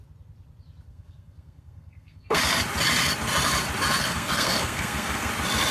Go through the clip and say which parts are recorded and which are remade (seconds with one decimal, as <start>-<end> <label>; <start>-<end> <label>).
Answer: 0.0-0.9 recorded; 0.9-2.4 remade; 2.4-4.0 recorded; 4.0-5.3 remade; 5.3-5.7 recorded